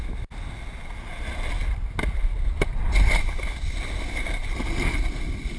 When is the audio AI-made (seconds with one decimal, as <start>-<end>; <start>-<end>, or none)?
none